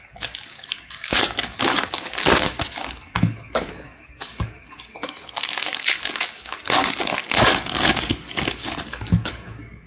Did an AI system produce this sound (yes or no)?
yes